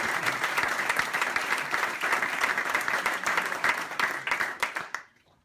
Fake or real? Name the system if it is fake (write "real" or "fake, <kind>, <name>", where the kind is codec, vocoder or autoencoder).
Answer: fake, vocoder, BigVGAN v2